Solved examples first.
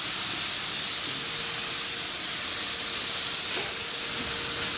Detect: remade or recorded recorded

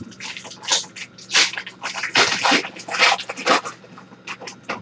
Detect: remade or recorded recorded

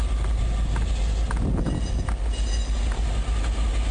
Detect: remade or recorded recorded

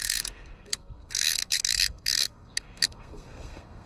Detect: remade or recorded remade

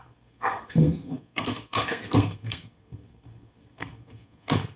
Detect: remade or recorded remade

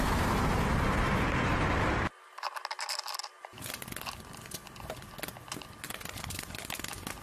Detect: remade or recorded recorded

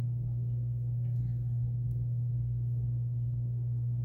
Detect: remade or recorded remade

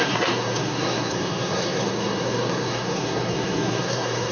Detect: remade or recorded remade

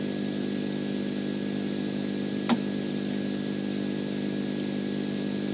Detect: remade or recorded recorded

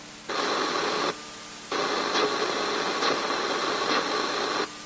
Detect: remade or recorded recorded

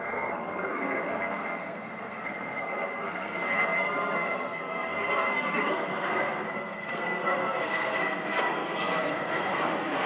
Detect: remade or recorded remade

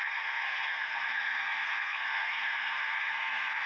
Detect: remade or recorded remade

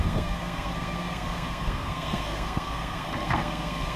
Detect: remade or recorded remade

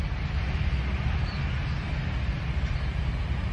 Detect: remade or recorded recorded